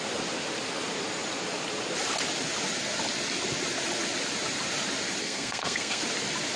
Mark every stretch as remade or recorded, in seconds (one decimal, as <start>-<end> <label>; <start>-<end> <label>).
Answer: 0.0-5.2 recorded; 5.2-6.0 remade; 6.0-6.6 recorded